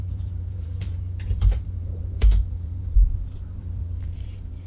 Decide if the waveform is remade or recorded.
remade